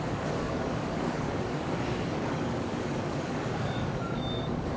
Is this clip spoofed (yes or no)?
yes